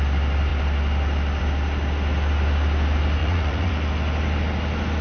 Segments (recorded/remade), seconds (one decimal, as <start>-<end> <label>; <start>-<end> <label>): 0.0-3.2 recorded; 3.2-3.7 remade; 3.7-5.0 recorded